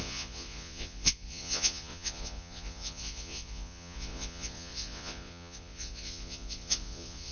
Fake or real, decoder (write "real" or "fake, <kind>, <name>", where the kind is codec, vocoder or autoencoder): fake, vocoder, Vocos